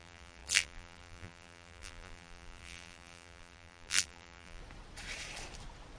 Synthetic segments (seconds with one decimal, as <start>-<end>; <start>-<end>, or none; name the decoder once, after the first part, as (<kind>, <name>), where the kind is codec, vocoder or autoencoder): 0.0-4.6 (vocoder, BigVGAN v2)